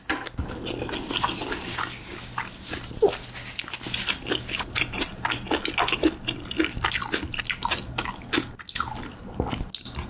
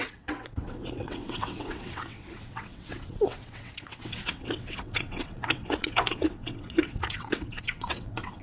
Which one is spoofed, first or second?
second